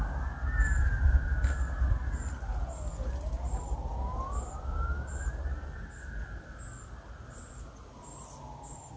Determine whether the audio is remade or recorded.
recorded